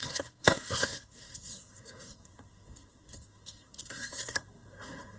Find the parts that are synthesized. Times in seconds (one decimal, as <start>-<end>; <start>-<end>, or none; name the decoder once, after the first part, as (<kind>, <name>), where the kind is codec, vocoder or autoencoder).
0.0-5.2 (codec, SNAC)